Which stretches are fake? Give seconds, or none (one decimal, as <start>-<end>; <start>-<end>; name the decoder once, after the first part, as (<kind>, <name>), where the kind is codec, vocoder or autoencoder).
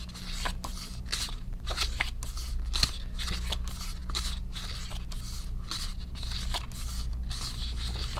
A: none